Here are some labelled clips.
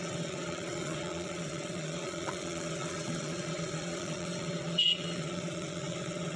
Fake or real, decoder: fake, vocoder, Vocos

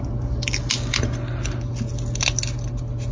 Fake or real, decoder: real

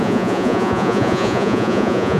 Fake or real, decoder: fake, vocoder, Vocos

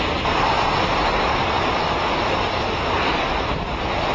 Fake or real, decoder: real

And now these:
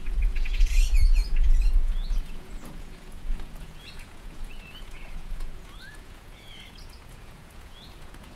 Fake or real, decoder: fake, vocoder, Vocos